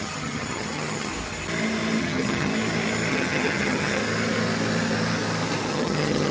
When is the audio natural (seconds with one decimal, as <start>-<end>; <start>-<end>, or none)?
1.1-2.0; 2.5-3.1; 4.0-5.7